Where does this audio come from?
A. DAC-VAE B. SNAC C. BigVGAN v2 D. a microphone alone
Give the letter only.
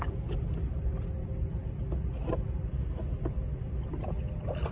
D